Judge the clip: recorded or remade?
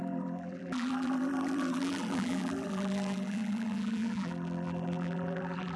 remade